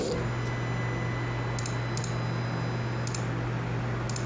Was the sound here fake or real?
real